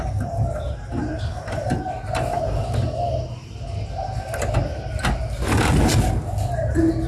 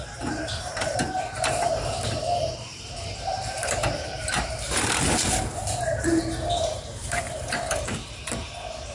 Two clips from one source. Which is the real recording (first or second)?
first